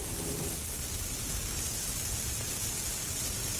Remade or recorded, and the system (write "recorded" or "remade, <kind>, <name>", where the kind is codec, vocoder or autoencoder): recorded